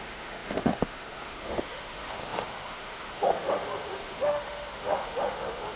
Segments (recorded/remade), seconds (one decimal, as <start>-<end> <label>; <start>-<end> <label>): 0.0-5.8 remade

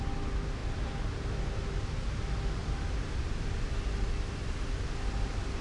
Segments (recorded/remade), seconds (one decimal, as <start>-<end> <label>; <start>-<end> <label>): 0.0-5.6 recorded

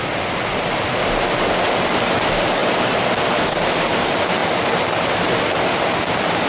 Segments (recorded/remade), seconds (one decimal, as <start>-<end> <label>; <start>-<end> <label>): 0.0-6.5 recorded